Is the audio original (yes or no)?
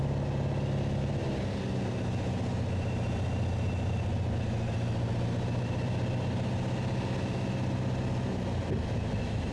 yes